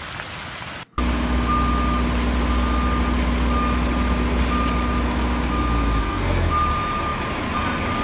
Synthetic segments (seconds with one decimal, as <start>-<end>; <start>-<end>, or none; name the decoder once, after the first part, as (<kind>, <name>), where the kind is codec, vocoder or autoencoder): 6.0-6.5 (codec, SNAC)